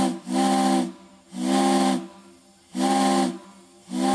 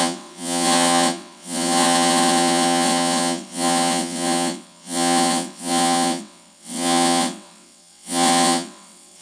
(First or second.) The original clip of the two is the first